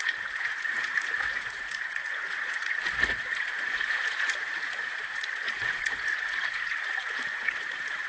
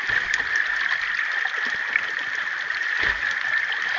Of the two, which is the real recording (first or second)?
second